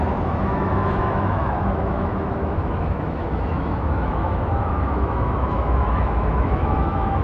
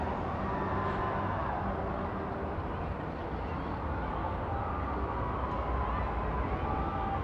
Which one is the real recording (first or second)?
second